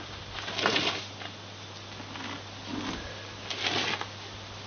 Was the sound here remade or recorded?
recorded